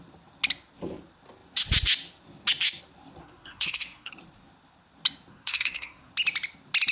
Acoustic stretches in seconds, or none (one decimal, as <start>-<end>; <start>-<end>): 0.0-3.2; 4.1-5.3; 6.1-6.9